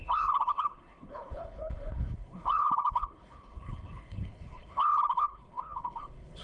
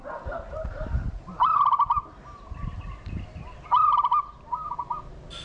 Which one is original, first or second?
second